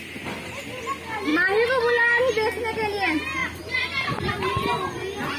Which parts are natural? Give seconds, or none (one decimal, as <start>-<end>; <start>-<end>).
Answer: 0.0-3.4; 4.3-5.4